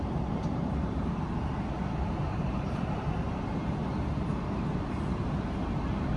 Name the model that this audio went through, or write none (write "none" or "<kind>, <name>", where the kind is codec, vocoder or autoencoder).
vocoder, BigVGAN v2